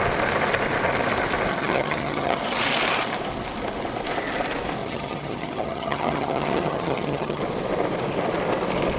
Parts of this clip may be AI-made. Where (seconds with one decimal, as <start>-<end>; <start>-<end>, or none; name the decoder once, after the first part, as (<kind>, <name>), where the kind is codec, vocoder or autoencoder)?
1.5-2.4 (vocoder, HiFi-GAN); 4.8-7.4